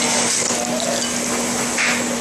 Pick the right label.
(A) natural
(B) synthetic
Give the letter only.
A